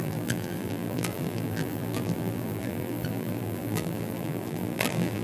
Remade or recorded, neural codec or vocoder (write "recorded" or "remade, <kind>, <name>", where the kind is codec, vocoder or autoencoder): remade, vocoder, BigVGAN v2